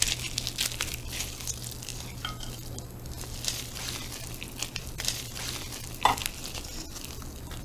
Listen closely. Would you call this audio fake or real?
real